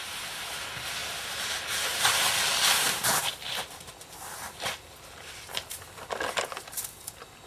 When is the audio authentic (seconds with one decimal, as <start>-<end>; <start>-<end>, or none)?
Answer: 0.0-7.5